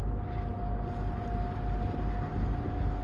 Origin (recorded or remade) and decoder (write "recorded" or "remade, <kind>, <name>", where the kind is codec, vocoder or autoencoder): recorded